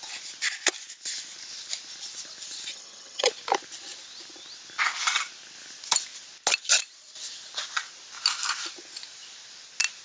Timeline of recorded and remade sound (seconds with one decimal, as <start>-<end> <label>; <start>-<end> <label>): 0.0-2.7 recorded; 2.7-3.3 remade; 3.3-10.0 recorded